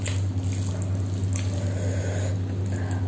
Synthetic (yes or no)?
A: no